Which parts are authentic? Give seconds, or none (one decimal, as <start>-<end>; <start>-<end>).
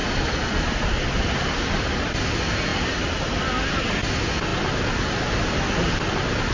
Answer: 1.4-2.7; 3.2-6.5